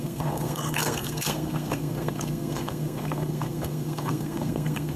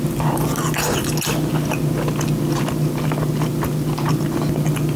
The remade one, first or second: first